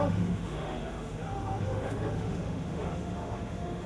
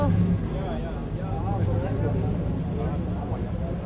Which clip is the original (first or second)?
second